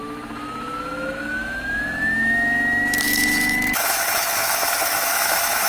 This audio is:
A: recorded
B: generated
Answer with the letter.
B